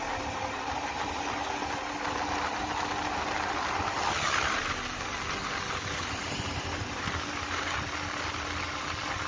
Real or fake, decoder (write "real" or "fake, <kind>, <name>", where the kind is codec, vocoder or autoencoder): real